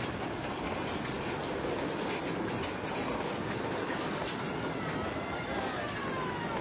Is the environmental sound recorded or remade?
recorded